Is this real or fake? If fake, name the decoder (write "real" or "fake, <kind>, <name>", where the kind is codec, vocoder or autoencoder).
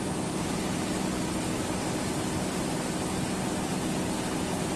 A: real